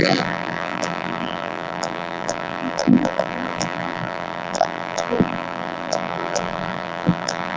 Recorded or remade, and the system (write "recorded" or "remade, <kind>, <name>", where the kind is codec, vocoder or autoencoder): remade, vocoder, BigVGAN v2